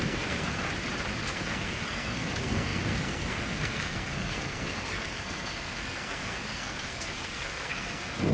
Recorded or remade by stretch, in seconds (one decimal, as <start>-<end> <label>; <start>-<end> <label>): 0.0-0.7 remade; 0.7-1.2 recorded; 1.2-8.3 remade